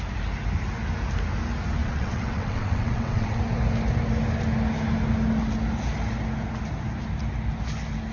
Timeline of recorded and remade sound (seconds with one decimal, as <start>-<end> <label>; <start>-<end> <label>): 0.0-1.8 recorded; 1.8-3.4 remade; 3.4-8.1 recorded